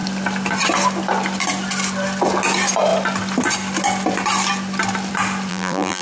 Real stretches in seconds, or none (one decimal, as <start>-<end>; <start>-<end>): 0.0-5.5